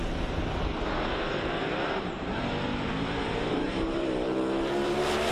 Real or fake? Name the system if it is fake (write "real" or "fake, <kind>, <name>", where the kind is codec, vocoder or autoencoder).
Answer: fake, vocoder, BigVGAN v2